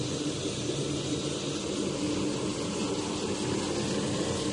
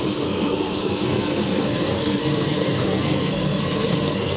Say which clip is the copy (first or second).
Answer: second